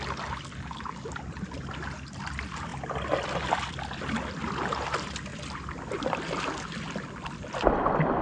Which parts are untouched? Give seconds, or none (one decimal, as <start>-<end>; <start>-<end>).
0.0-8.2

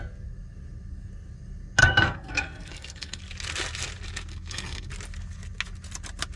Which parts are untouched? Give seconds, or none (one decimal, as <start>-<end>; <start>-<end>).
0.0-1.8; 3.2-4.3; 4.9-6.4

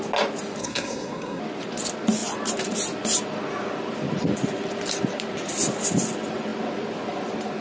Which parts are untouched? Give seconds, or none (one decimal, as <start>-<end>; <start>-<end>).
0.0-0.6; 1.4-7.6